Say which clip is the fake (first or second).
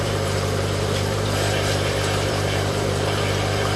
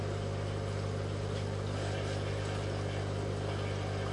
first